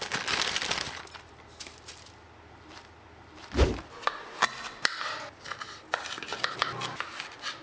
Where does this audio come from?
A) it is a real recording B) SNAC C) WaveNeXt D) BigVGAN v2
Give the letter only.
A